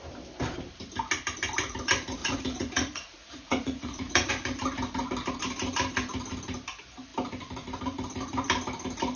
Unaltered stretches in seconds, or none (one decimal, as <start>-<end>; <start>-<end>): 0.0-2.2; 4.3-9.2